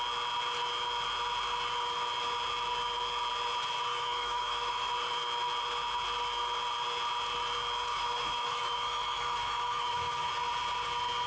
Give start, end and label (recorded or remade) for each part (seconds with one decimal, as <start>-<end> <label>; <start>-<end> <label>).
0.0-3.9 recorded; 3.9-4.9 remade; 4.9-7.9 recorded; 7.9-10.3 remade; 10.3-11.3 recorded